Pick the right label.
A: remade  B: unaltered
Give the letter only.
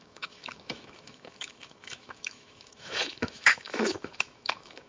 A